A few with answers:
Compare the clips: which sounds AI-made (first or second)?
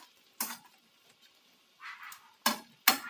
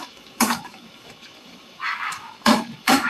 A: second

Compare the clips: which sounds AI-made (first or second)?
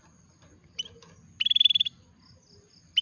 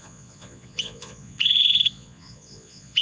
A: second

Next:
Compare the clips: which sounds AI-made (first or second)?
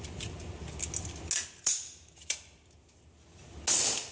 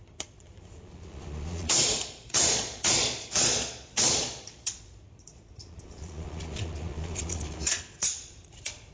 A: second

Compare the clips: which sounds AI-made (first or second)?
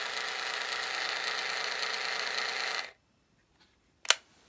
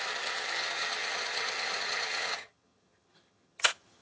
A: second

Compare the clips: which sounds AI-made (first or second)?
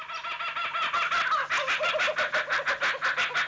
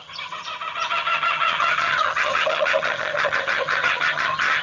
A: second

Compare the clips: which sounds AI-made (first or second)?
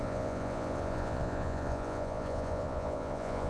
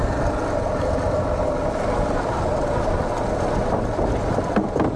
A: first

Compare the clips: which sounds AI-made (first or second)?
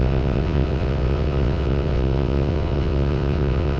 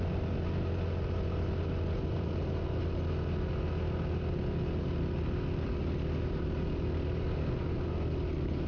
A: first